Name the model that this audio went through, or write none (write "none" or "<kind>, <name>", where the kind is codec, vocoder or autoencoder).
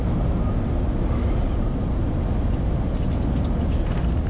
none